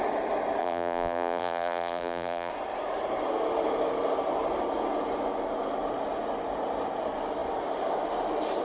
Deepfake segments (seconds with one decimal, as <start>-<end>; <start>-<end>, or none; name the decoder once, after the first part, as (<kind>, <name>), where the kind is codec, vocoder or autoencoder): 0.6-2.5 (vocoder, BigVGAN v2)